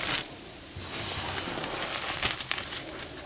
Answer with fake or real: real